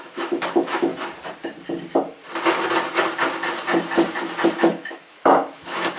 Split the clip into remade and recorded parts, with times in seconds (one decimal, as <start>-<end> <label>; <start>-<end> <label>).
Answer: 0.0-0.9 remade; 0.9-4.5 recorded; 4.5-6.0 remade